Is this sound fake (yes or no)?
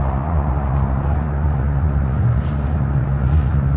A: yes